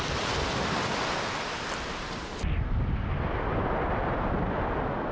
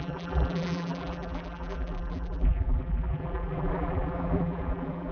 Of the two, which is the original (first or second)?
first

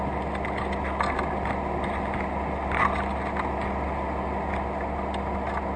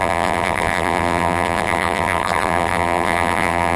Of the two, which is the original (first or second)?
first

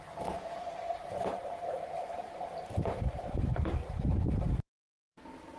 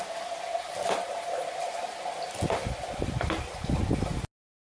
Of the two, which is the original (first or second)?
second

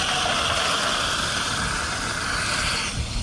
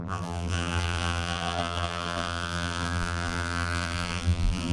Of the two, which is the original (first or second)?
first